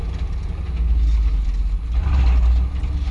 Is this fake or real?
real